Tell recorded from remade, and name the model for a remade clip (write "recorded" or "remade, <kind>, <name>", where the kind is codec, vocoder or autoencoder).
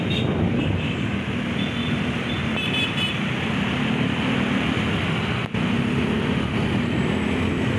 recorded